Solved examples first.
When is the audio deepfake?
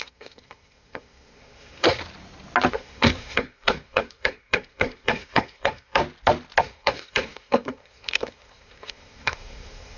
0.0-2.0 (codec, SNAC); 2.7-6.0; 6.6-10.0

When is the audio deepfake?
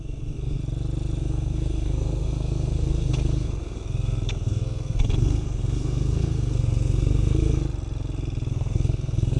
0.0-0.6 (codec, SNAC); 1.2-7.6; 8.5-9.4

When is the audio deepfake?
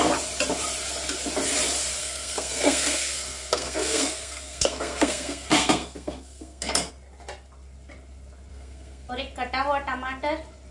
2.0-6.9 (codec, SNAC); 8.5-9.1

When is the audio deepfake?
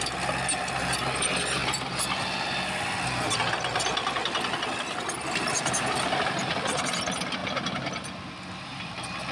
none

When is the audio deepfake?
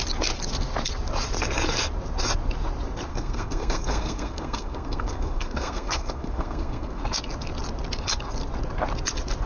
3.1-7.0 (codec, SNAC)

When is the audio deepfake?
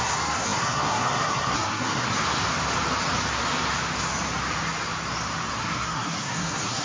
0.0-2.2 (codec, SNAC); 5.6-6.8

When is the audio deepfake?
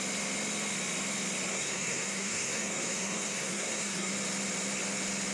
1.5-4.1 (codec, SNAC)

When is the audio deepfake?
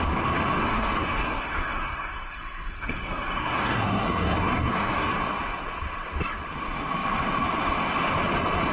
0.6-5.1 (codec, SNAC)